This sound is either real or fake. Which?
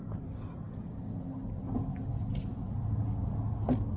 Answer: real